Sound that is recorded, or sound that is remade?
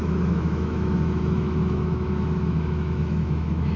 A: remade